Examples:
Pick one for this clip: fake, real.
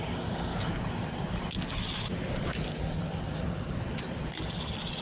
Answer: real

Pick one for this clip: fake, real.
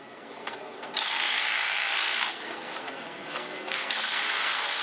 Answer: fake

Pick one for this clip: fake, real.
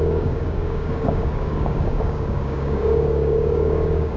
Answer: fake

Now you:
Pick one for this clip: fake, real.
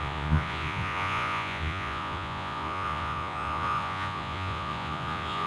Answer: fake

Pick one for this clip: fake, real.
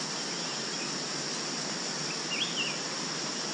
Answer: real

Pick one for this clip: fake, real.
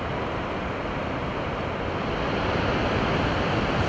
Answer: real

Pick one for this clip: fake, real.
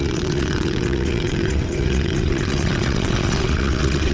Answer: fake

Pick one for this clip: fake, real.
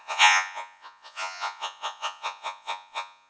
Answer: fake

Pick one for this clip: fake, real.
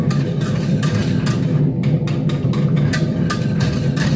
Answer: real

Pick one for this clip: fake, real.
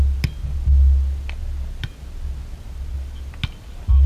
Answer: real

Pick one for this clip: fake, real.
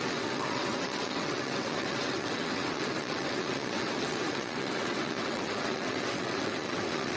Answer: fake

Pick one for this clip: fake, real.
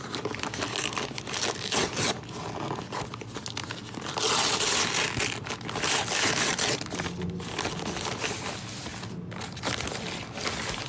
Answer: real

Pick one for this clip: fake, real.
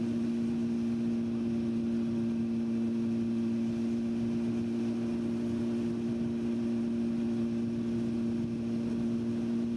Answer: real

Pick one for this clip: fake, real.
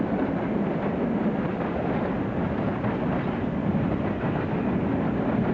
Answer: real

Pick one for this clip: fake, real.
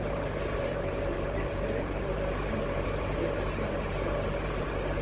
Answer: fake